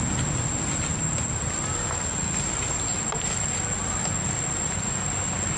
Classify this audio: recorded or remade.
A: recorded